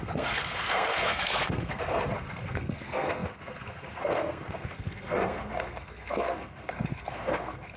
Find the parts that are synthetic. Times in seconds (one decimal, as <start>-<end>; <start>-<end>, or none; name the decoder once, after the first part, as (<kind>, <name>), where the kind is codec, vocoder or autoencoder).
0.0-7.8 (codec, SNAC)